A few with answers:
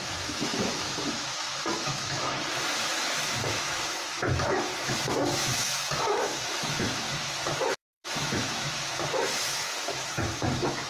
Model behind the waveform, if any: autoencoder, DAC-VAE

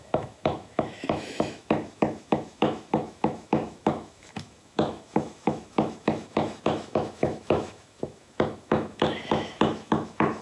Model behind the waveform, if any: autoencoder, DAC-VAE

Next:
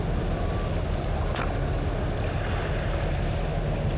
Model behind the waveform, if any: none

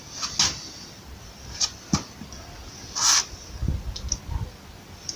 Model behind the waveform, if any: none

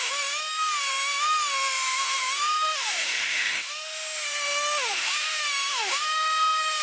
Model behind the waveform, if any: autoencoder, DAC-VAE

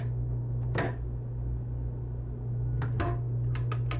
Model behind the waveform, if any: none